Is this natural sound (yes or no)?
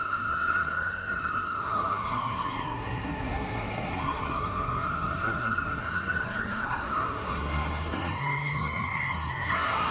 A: no